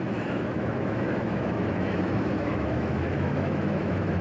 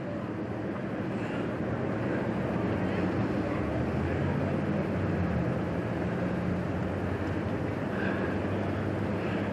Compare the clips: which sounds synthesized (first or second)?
first